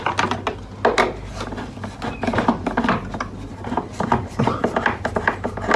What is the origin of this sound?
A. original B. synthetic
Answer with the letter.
A